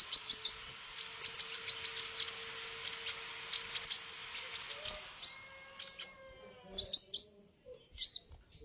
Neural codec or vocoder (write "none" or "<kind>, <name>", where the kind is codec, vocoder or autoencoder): none